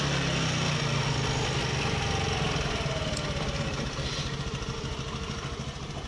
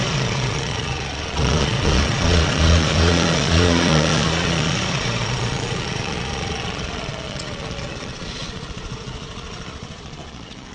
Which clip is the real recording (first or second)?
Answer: first